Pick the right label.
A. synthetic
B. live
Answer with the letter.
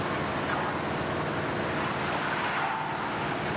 B